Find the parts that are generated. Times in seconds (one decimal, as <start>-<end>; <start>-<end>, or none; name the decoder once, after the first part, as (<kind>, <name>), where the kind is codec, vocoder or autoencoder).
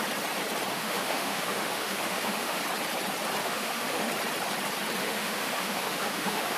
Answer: 0.7-2.6 (autoencoder, DAC-VAE); 3.4-4.1; 5.0-6.6